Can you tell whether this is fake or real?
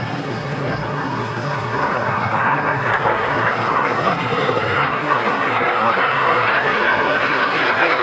fake